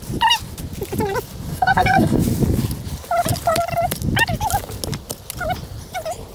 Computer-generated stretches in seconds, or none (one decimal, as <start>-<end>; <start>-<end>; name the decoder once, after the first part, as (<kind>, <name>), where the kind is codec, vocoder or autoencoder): 1.5-2.2 (codec, SNAC)